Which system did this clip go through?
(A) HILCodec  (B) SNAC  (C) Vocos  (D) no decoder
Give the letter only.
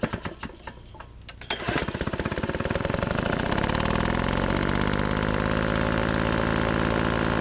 D